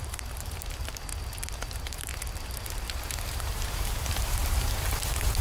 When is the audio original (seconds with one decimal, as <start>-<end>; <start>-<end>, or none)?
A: 1.1-1.6; 2.1-3.3